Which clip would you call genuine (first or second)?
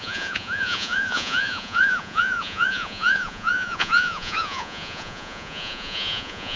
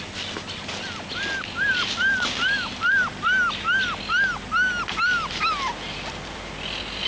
second